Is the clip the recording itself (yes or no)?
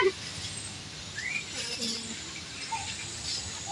yes